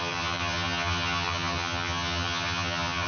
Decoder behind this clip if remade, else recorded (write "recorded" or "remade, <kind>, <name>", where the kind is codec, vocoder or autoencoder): remade, vocoder, HiFi-GAN